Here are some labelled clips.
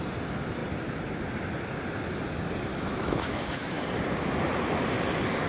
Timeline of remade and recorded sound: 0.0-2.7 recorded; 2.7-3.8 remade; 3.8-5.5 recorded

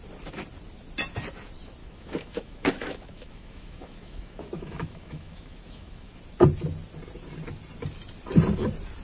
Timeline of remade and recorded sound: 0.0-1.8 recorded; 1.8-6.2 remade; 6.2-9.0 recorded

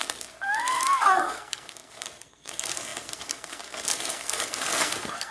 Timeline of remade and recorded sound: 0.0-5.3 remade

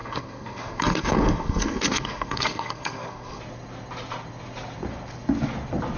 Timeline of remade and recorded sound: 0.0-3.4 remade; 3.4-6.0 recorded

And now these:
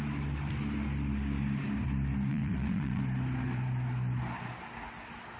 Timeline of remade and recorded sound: 0.0-2.3 recorded; 2.3-3.0 remade; 3.0-5.4 recorded